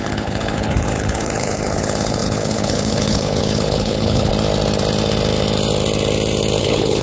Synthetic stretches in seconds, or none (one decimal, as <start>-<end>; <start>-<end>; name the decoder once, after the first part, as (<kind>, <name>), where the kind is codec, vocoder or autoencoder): 0.0-4.3 (codec, HILCodec); 6.6-7.0